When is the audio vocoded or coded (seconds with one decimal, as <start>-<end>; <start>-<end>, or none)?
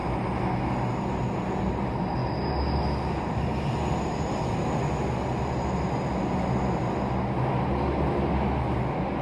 none